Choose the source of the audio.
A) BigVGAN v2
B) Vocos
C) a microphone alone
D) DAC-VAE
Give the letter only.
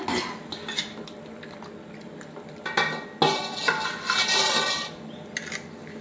C